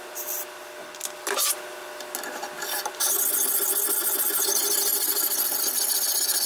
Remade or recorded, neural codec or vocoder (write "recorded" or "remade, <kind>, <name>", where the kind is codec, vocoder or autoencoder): recorded